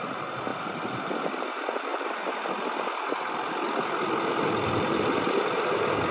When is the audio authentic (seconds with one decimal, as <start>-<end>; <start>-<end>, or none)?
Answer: 0.0-0.5; 1.1-6.1